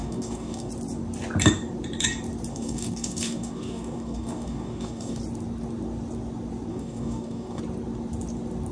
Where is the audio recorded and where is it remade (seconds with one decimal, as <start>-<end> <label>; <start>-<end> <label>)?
0.0-0.7 remade; 0.7-2.5 recorded; 2.5-5.2 remade; 5.2-6.7 recorded; 6.7-7.6 remade; 7.6-8.7 recorded